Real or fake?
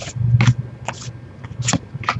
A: real